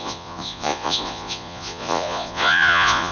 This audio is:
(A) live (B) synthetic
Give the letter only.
B